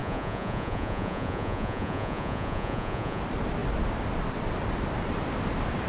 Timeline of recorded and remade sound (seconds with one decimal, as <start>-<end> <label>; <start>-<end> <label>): 0.0-3.2 remade; 3.2-5.9 recorded